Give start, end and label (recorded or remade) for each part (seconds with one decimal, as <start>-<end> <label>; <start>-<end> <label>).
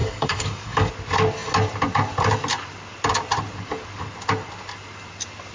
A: 0.0-0.9 remade; 0.9-5.5 recorded